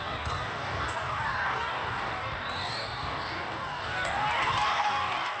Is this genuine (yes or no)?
no